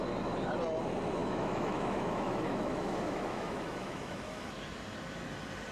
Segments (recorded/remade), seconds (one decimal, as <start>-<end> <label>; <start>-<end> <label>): 0.0-1.2 recorded; 1.2-4.5 remade; 4.5-5.7 recorded